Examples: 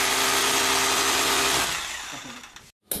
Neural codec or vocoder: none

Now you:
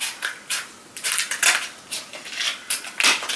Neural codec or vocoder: none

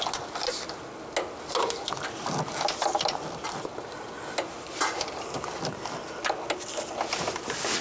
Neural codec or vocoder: none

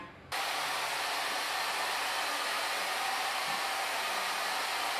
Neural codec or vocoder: none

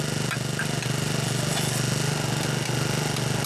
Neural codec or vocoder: none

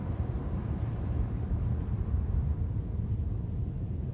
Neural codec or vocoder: vocoder, BigVGAN v2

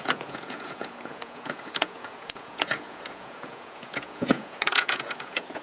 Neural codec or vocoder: vocoder, Vocos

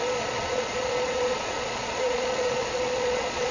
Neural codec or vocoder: vocoder, Vocos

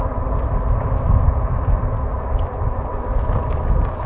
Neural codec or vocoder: none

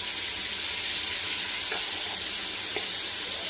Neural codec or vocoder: none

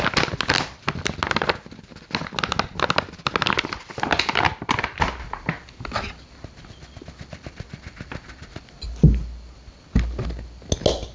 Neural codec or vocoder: none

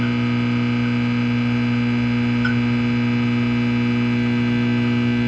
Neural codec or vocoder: none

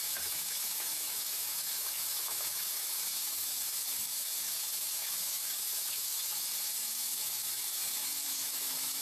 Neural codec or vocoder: autoencoder, DAC-VAE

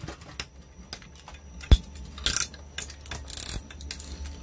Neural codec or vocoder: none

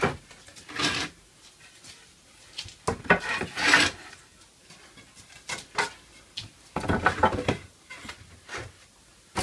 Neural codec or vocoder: none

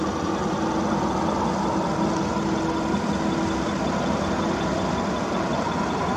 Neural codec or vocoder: none